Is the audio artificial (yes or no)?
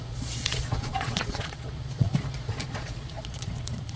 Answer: yes